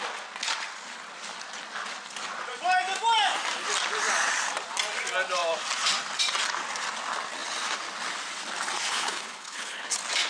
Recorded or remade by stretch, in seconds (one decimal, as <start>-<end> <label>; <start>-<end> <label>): 0.0-8.9 recorded; 8.9-9.9 remade; 9.9-10.3 recorded